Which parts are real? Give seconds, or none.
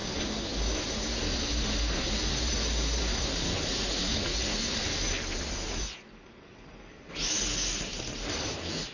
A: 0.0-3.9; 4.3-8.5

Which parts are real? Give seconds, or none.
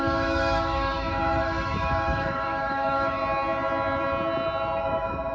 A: 3.2-4.8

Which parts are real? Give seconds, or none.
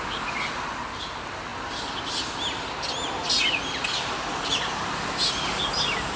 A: 0.0-6.2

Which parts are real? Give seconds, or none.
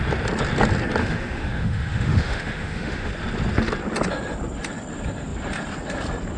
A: 0.0-1.0; 3.1-6.4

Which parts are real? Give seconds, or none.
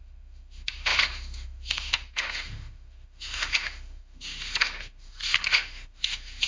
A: none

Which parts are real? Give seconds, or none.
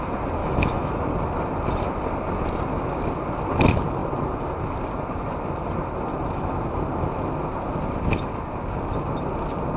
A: 0.0-0.4; 1.0-6.1; 6.6-9.8